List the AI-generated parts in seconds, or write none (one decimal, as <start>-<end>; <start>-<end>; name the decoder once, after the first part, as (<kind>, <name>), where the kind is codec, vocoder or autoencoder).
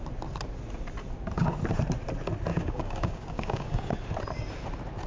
2.5-3.9 (codec, DAC)